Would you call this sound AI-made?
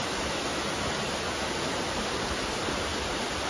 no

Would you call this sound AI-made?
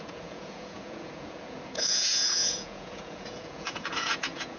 yes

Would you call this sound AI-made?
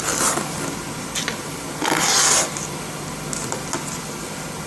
no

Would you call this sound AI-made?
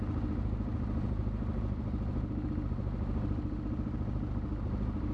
no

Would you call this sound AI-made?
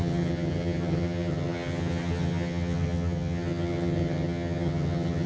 yes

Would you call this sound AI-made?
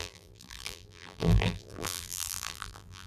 yes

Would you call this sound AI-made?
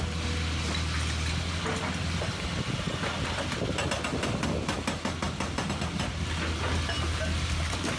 no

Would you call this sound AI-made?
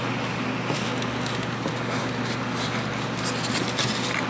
no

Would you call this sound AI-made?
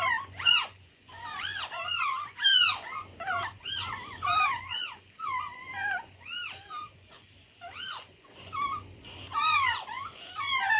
yes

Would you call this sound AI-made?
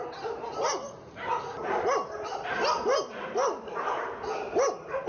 no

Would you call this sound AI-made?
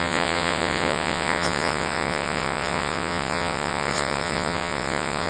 yes